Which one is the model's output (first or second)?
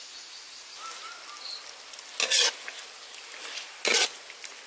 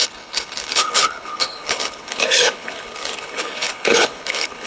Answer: second